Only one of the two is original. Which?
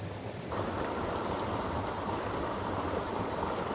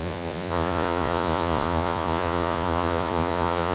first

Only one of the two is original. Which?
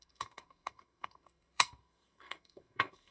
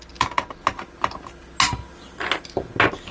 second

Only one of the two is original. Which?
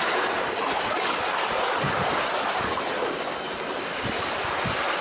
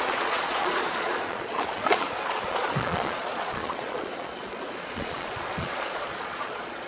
first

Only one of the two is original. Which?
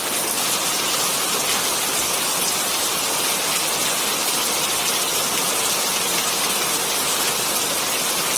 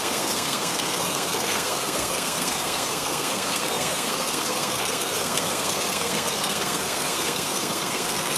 first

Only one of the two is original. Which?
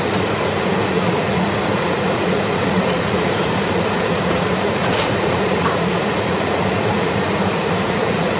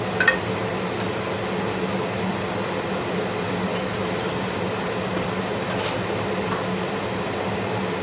second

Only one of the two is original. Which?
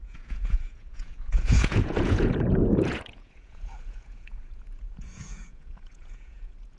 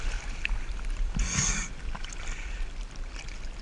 second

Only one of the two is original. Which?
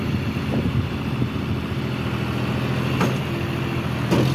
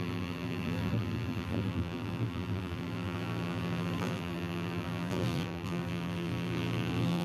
first